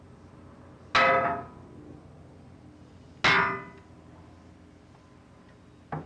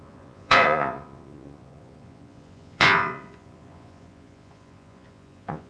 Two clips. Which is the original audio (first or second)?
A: first